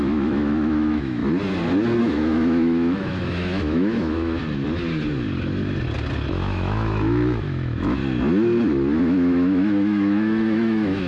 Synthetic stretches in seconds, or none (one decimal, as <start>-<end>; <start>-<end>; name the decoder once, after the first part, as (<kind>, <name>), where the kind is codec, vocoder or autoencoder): 0.0-1.2 (autoencoder, DAC-VAE); 2.0-4.4; 6.3-8.0; 9.0-11.1